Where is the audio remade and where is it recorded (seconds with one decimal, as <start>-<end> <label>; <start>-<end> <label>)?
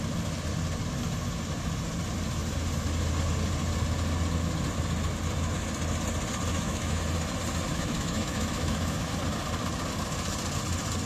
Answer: 0.0-6.5 recorded; 6.5-7.0 remade; 7.0-7.7 recorded; 7.7-9.1 remade; 9.1-11.1 recorded